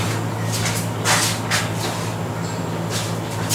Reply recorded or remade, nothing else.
recorded